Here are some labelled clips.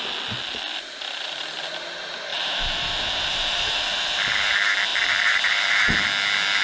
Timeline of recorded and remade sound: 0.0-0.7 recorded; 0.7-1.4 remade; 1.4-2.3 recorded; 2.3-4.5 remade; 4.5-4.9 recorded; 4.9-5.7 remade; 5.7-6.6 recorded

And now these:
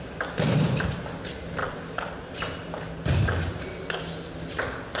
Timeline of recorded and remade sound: 0.0-5.0 recorded

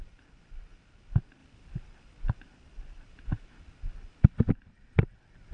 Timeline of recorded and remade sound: 0.0-5.5 recorded

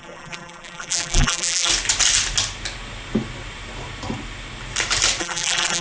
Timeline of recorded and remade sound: 0.0-1.7 remade; 1.7-5.2 recorded; 5.2-5.8 remade

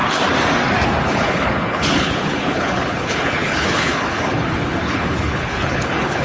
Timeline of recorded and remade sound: 0.0-1.0 recorded; 1.0-6.2 remade

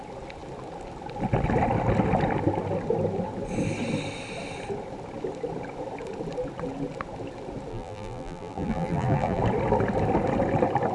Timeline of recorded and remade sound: 0.0-7.7 recorded; 7.7-9.4 remade; 9.4-10.9 recorded

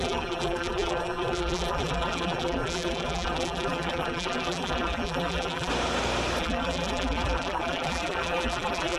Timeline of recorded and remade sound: 0.0-5.7 remade; 5.7-6.4 recorded; 6.4-9.0 remade